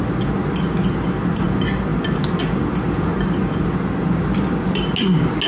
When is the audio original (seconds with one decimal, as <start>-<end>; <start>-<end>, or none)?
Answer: 0.0-5.5